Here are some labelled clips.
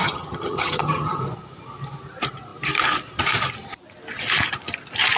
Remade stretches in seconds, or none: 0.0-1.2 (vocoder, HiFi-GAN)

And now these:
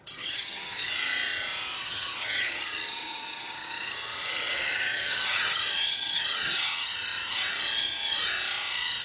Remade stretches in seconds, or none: 0.0-0.9 (vocoder, HiFi-GAN); 1.8-6.9

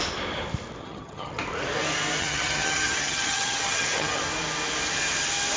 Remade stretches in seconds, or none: 0.8-1.3 (vocoder, HiFi-GAN); 2.2-4.2